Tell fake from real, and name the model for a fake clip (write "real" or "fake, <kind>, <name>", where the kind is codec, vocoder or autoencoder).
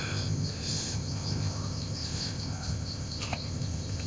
fake, codec, ZipCodec